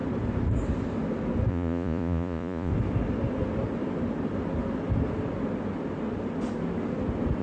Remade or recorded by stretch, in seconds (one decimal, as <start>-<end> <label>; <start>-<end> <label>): 0.0-1.5 recorded; 1.5-2.7 remade; 2.7-7.4 recorded